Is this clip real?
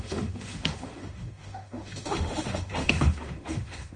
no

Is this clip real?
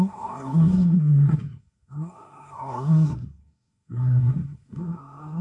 no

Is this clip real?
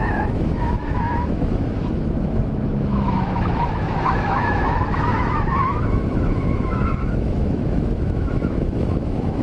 no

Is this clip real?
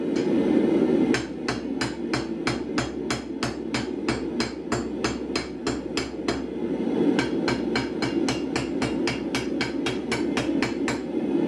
yes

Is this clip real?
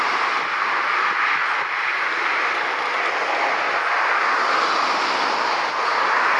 yes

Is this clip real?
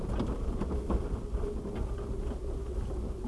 yes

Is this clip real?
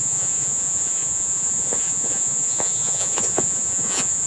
no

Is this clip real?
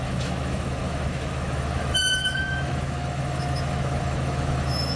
no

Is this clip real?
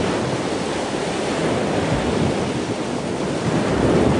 yes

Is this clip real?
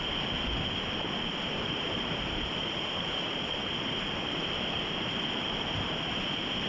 no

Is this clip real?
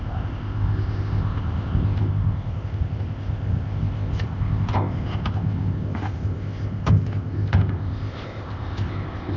no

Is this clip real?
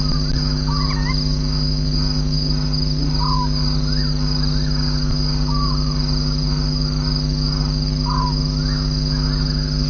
yes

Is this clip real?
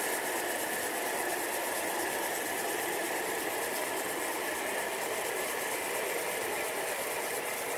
yes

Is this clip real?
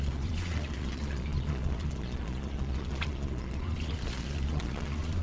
no